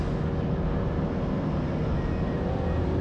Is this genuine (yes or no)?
yes